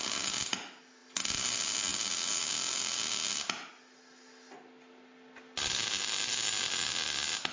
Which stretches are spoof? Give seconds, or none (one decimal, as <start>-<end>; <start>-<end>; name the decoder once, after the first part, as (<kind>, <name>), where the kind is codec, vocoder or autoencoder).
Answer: none